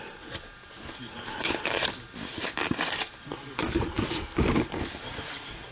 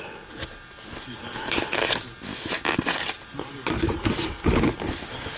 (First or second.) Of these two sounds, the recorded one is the second